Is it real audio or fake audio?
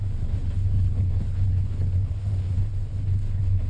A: fake